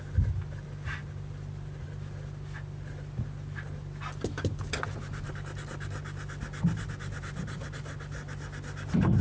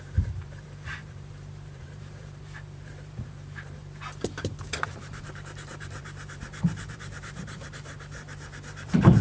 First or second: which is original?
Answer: first